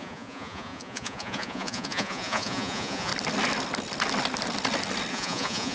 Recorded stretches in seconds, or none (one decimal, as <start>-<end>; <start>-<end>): 3.1-5.1